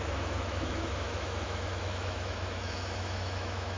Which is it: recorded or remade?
remade